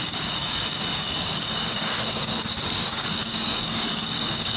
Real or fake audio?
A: fake